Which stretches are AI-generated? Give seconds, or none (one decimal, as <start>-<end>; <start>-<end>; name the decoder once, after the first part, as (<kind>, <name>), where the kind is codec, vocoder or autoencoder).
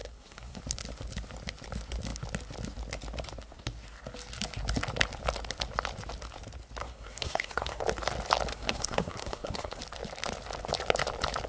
0.0-0.6 (codec, SNAC); 6.8-7.8; 8.5-9.8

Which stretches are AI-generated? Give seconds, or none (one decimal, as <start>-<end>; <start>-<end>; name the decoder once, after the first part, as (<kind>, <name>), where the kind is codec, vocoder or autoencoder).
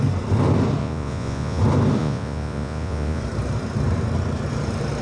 0.8-1.6 (vocoder, Vocos); 2.0-3.2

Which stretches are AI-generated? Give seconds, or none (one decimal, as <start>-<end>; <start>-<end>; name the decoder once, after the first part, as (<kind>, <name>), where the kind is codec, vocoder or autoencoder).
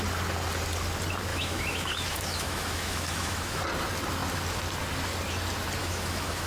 1.3-3.6 (autoencoder, DAC-VAE); 5.8-6.5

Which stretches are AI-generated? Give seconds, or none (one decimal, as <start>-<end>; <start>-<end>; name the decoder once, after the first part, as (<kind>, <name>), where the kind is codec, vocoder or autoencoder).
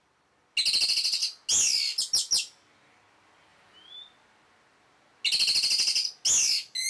none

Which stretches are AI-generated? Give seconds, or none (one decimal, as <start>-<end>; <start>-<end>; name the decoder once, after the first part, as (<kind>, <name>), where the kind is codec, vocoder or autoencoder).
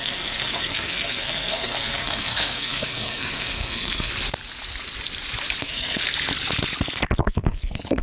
0.0-4.1 (codec, SNAC); 5.6-6.0; 7.2-8.0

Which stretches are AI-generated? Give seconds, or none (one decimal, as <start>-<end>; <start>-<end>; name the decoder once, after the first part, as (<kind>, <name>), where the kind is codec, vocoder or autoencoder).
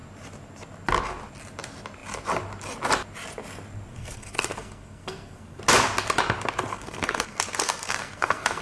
3.9-5.6 (codec, SNAC); 6.7-8.6